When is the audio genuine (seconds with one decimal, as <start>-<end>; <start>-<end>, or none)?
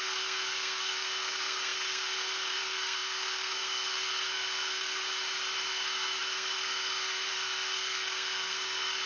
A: 5.0-5.7